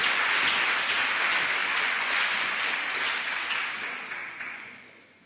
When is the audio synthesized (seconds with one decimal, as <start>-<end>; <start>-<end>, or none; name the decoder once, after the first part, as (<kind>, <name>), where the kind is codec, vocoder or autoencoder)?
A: 0.0-0.6 (vocoder, Vocos); 1.6-2.6; 4.2-5.3